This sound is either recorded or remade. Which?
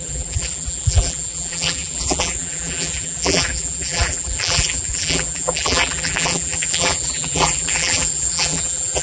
remade